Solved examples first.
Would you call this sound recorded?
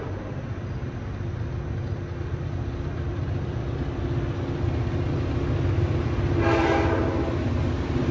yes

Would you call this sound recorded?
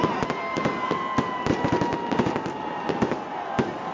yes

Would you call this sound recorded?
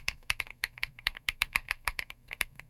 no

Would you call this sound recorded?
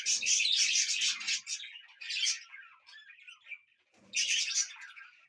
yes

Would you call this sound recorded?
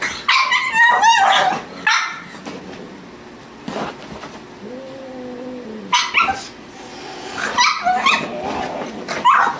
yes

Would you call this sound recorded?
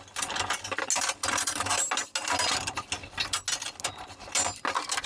yes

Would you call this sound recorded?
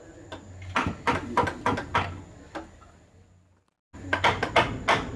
yes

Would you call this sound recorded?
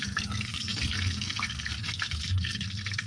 no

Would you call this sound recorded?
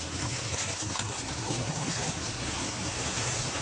no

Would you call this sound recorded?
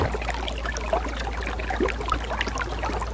yes